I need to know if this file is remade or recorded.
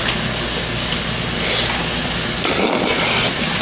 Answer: recorded